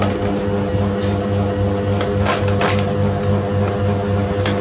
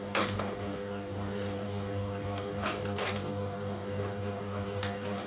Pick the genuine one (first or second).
first